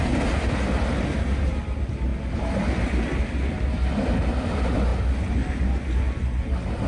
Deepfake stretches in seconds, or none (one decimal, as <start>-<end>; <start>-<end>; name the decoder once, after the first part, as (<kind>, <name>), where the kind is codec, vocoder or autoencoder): none